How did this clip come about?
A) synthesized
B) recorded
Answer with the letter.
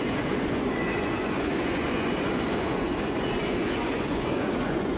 A